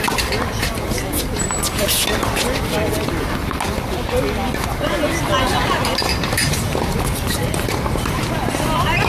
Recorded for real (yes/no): yes